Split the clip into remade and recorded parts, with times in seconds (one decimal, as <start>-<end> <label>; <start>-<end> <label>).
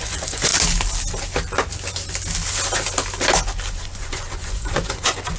0.0-0.5 remade; 0.5-3.7 recorded; 3.7-5.4 remade